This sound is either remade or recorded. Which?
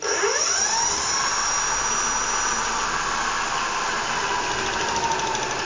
recorded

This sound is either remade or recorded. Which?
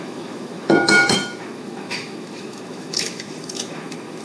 remade